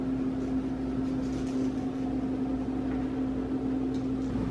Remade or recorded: recorded